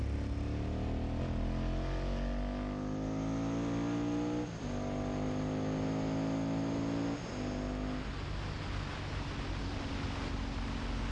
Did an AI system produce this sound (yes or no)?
no